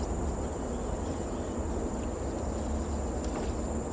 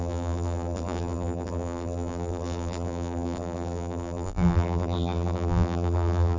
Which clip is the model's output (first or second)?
second